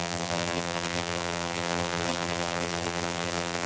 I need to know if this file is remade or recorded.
remade